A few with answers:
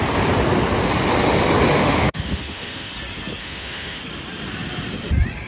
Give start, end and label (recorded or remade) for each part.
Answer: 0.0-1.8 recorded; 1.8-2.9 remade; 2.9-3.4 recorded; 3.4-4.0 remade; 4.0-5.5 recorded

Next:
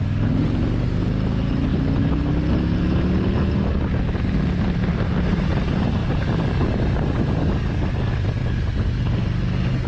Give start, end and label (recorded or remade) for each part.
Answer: 0.0-9.9 recorded

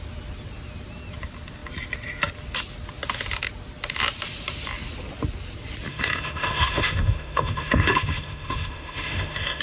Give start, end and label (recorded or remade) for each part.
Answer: 0.0-5.9 recorded; 5.9-9.6 remade

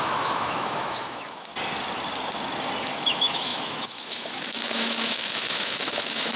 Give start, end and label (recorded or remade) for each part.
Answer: 0.0-1.5 remade; 1.5-2.8 recorded; 2.8-6.4 remade

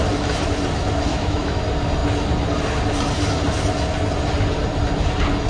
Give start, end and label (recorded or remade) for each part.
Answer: 0.0-1.1 recorded; 1.1-1.6 remade; 1.6-5.5 recorded

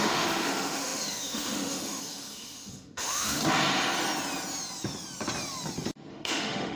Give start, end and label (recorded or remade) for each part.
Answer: 0.0-3.4 remade; 3.4-6.1 recorded; 6.1-6.8 remade